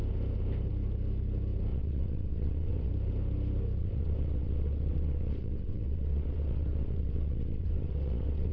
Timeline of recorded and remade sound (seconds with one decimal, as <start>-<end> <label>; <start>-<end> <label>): 0.0-1.7 recorded; 1.7-2.9 remade; 2.9-3.8 recorded; 3.8-8.5 remade